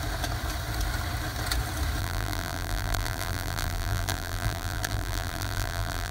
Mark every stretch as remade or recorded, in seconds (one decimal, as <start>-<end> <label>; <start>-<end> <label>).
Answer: 0.0-2.0 recorded; 2.0-6.1 remade